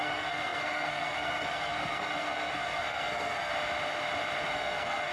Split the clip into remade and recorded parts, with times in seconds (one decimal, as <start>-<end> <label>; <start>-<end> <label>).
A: 0.0-3.5 remade; 3.5-4.5 recorded; 4.5-5.1 remade

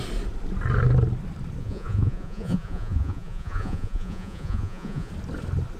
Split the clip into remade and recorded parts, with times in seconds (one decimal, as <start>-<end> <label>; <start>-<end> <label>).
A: 0.0-1.6 recorded; 1.6-5.1 remade; 5.1-5.8 recorded

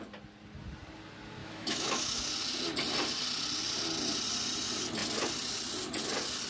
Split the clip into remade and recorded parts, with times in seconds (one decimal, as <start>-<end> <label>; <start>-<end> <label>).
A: 0.0-1.4 recorded; 1.4-2.2 remade; 2.2-6.5 recorded

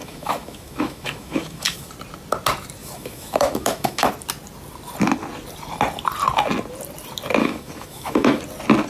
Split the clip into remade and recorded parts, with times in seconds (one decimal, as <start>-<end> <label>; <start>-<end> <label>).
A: 0.0-1.9 remade; 1.9-2.8 recorded; 2.8-4.1 remade; 4.1-7.4 recorded; 7.4-8.4 remade; 8.4-8.9 recorded

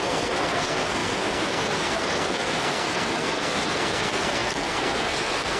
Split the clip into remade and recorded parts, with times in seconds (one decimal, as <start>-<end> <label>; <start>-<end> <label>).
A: 0.0-5.6 remade

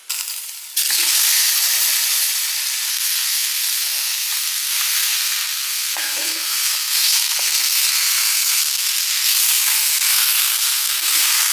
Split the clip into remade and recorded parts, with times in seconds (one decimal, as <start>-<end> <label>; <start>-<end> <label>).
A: 0.0-0.9 recorded; 0.9-1.5 remade; 1.5-2.9 recorded; 2.9-11.5 remade

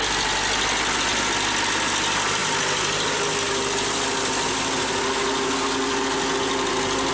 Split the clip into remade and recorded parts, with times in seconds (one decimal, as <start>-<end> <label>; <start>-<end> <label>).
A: 0.0-7.1 recorded

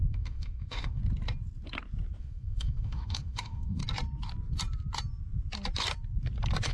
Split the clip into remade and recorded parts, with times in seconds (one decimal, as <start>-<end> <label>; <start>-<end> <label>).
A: 0.0-1.0 remade; 1.0-2.2 recorded; 2.2-3.8 remade; 3.8-6.7 recorded